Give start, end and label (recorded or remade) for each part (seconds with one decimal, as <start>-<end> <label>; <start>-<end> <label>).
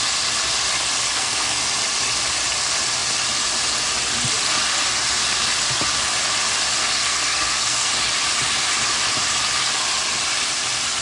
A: 0.0-1.1 recorded; 1.1-1.6 remade; 1.6-6.8 recorded; 6.8-7.9 remade; 7.9-11.0 recorded